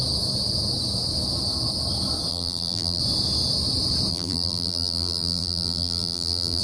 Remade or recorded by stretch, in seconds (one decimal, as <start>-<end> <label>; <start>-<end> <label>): 0.0-2.3 recorded; 2.3-3.0 remade; 3.0-4.1 recorded; 4.1-6.6 remade